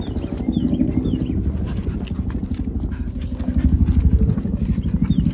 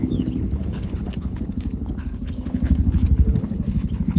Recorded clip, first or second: first